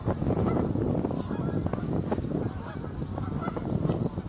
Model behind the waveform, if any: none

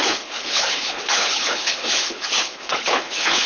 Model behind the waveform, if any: codec, HILCodec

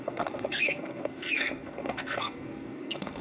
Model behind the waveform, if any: codec, SNAC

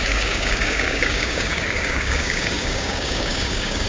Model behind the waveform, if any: codec, DAC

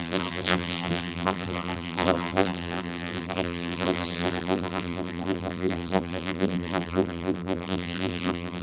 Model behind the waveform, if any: vocoder, BigVGAN v2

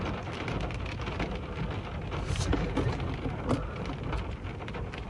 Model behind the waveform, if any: none